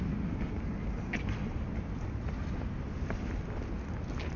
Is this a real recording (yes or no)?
yes